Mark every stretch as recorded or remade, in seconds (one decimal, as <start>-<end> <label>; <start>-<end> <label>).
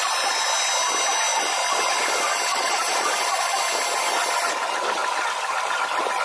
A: 0.0-2.5 recorded; 2.5-3.1 remade; 3.1-6.2 recorded